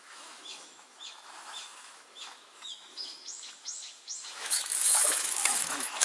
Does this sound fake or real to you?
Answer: fake